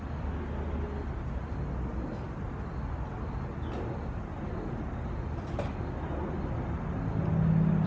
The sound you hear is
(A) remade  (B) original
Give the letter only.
B